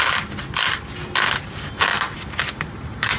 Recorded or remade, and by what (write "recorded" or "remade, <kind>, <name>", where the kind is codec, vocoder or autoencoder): recorded